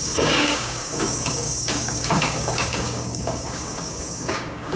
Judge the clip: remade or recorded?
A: remade